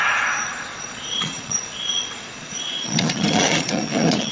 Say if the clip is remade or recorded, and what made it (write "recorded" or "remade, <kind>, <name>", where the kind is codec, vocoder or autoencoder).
remade, vocoder, Vocos